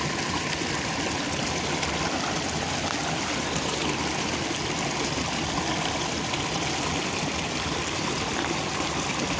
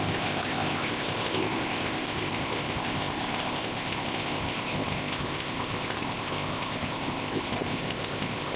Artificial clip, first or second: second